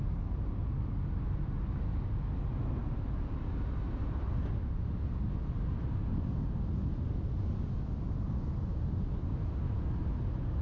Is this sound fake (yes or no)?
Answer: no